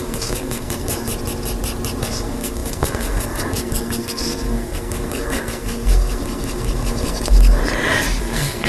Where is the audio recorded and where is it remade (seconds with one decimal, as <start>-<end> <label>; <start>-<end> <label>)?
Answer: 0.0-1.1 remade; 1.1-2.0 recorded; 2.0-7.6 remade; 7.6-8.2 recorded; 8.2-8.7 remade